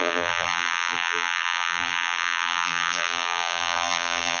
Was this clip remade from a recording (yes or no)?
yes